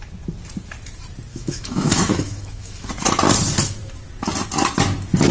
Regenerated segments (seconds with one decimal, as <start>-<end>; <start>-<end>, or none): 1.3-2.9